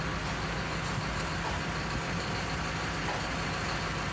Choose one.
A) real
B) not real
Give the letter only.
A